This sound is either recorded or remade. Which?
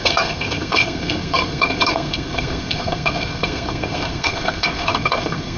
remade